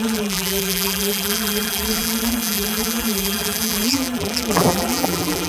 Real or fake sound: fake